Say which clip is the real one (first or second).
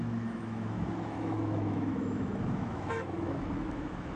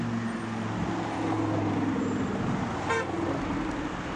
second